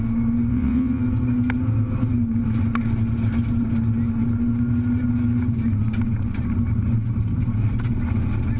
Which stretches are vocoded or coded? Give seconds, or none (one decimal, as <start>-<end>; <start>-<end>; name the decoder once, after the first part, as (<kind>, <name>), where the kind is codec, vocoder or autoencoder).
0.5-1.0 (vocoder, WaveNeXt)